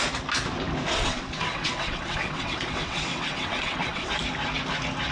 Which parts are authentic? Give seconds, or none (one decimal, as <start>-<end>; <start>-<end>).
0.0-1.0; 4.1-5.1